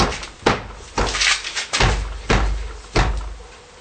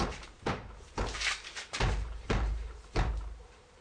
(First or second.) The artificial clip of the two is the second